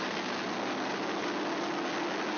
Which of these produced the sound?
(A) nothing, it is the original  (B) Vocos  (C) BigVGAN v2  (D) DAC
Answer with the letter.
A